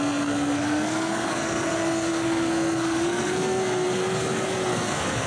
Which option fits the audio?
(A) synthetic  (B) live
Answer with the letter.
A